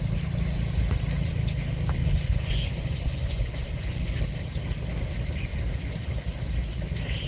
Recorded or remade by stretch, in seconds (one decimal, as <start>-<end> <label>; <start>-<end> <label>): 0.0-2.0 recorded; 2.0-4.2 remade; 4.2-7.3 recorded